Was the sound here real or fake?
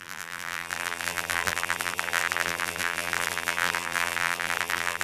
fake